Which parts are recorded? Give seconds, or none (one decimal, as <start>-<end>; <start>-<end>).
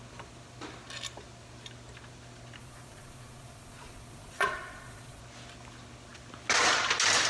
0.0-2.6; 5.2-7.3